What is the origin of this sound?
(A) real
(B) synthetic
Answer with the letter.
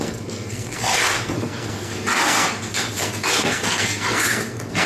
B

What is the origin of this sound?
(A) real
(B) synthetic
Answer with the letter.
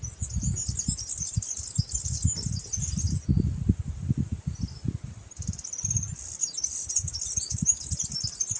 A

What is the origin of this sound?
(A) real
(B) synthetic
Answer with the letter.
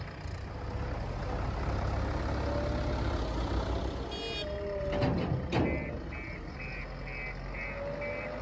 A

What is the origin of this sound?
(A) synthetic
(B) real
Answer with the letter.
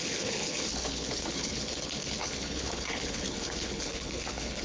A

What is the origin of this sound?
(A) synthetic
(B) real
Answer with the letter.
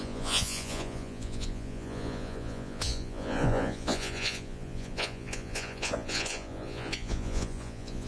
A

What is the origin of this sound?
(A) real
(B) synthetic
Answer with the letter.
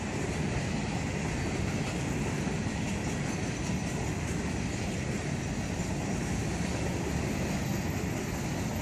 A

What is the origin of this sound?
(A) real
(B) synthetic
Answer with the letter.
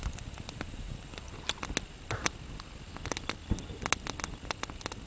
A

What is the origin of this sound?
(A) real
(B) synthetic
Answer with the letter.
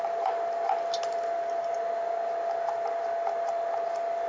A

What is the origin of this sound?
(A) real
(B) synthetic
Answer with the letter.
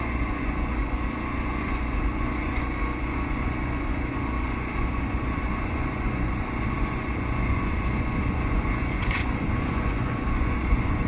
B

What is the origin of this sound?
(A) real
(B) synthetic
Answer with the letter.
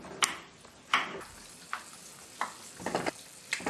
A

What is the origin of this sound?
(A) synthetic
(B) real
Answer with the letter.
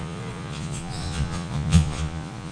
A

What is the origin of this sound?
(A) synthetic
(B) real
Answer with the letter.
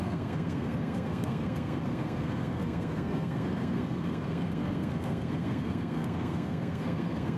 A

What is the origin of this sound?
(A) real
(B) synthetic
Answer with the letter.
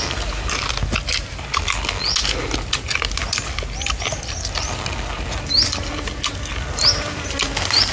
A